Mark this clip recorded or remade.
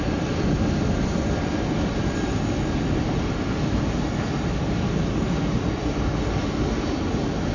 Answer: recorded